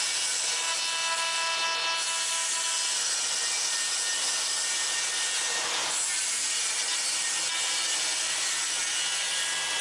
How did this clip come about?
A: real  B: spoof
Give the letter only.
A